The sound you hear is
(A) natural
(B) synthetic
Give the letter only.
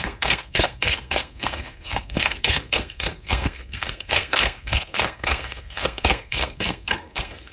B